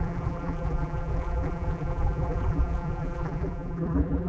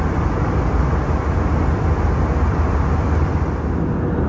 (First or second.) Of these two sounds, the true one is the second